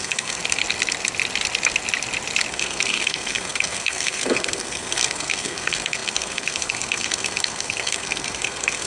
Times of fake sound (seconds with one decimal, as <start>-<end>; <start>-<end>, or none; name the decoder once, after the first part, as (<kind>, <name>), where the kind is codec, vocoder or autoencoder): 0.0-0.4 (codec, SNAC); 2.5-8.9